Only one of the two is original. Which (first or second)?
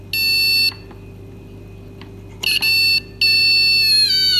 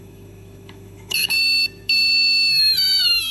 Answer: first